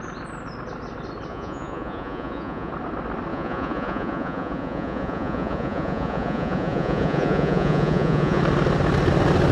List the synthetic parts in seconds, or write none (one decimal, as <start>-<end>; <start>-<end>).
1.3-2.7; 3.3-8.4